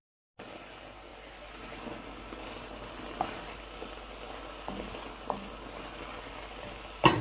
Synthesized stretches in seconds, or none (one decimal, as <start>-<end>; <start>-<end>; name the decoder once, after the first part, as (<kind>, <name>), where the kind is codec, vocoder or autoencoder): none